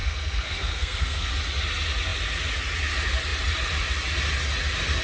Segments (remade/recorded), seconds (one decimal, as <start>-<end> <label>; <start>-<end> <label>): 0.0-1.3 remade; 1.3-5.0 recorded